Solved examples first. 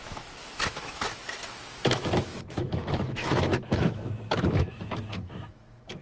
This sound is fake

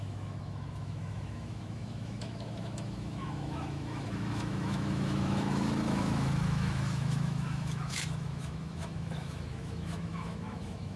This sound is fake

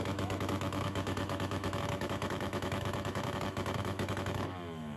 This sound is fake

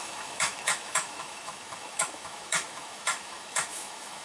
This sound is fake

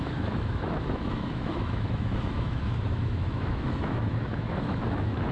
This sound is fake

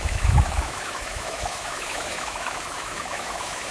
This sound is fake